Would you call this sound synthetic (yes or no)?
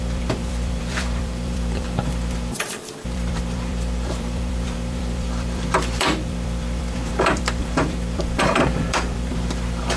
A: yes